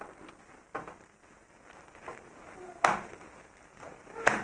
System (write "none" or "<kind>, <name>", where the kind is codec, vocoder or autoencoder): none